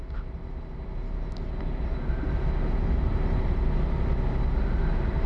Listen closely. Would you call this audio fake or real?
real